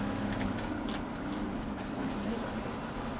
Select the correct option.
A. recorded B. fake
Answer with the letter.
A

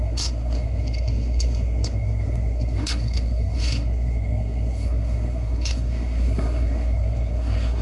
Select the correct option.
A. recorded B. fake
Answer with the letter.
B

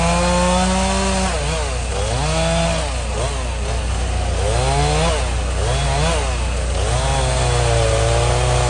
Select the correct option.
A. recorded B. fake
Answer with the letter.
A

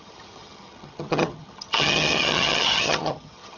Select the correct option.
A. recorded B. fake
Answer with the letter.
B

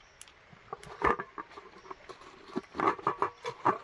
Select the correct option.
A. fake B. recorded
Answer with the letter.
B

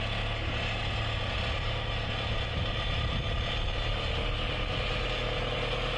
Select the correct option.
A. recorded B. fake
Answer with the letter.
A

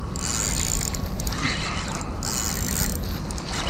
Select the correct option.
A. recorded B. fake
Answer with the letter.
A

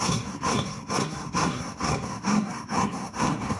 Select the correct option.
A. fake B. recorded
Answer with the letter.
A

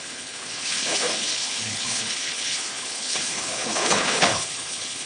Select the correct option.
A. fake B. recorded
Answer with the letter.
A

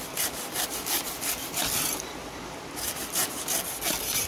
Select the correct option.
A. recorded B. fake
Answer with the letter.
A